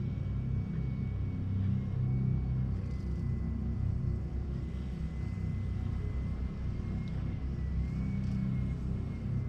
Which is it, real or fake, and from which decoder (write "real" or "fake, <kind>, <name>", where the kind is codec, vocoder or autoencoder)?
real